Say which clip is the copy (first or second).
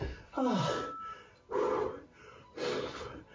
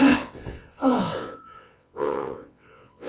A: second